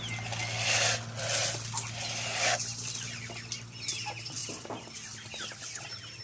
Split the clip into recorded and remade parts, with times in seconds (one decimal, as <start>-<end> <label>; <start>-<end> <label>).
0.0-6.2 recorded